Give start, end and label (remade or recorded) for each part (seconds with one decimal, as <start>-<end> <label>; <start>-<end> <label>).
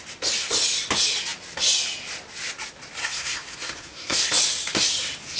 0.0-3.0 recorded; 3.0-4.3 remade; 4.3-5.4 recorded